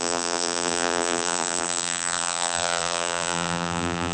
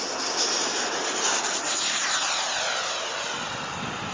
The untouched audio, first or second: second